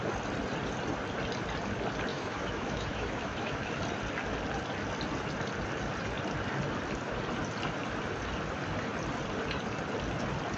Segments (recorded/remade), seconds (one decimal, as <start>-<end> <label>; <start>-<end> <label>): 0.0-2.1 recorded; 2.1-3.8 remade; 3.8-10.6 recorded